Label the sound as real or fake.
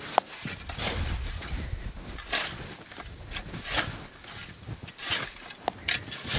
real